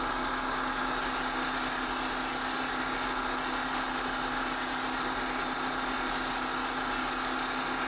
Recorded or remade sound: recorded